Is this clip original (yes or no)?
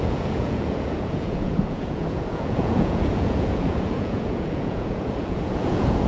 no